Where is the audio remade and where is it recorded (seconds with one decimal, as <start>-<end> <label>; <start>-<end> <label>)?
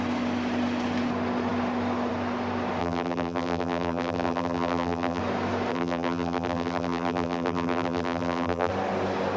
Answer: 0.0-2.8 recorded; 2.8-5.2 remade; 5.2-5.7 recorded; 5.7-8.7 remade; 8.7-9.4 recorded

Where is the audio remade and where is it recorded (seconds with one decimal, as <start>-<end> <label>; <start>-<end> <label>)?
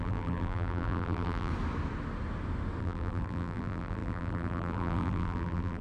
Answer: 0.0-1.5 remade; 1.5-2.8 recorded; 2.8-5.8 remade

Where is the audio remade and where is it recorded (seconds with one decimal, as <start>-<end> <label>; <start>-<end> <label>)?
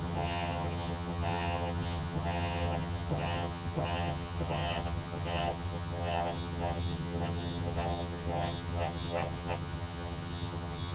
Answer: 0.0-10.9 remade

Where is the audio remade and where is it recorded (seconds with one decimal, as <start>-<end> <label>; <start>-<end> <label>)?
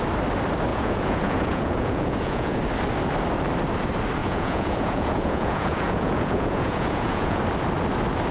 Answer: 0.0-0.7 recorded; 0.7-2.6 remade; 2.6-4.2 recorded; 4.2-7.4 remade; 7.4-8.3 recorded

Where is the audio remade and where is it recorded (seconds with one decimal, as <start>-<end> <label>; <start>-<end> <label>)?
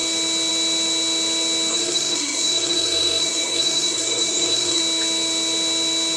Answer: 0.0-1.7 recorded; 1.7-4.8 remade; 4.8-6.2 recorded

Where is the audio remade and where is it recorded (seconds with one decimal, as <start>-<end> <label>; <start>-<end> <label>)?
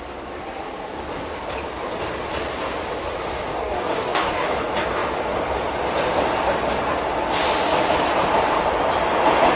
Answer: 0.0-3.5 recorded; 3.5-4.5 remade; 4.5-9.6 recorded